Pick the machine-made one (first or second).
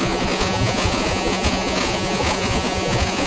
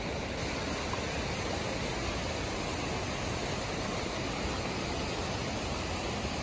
first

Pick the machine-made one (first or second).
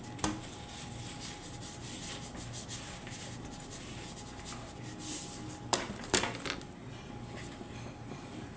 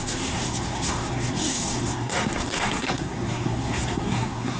second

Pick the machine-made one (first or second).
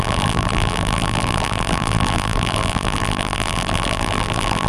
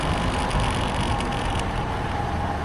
first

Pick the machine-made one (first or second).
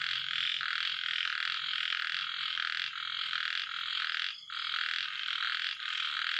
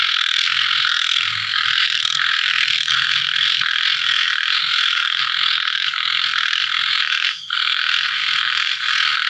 second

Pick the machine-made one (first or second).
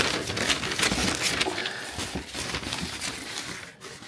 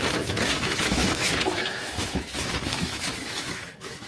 second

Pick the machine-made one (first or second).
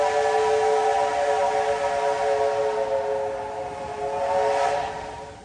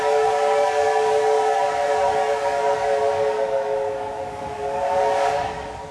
second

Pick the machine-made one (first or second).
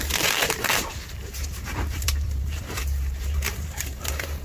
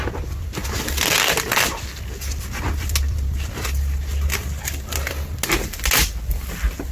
first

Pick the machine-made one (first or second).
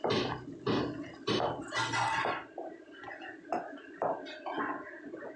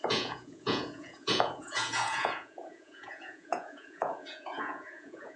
second